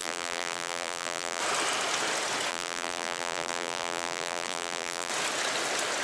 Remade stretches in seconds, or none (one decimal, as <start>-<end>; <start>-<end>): 0.0-1.4; 2.5-5.1